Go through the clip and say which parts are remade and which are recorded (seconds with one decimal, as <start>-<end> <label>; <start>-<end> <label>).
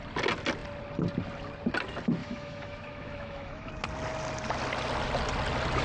0.0-2.2 recorded; 2.2-3.7 remade; 3.7-5.8 recorded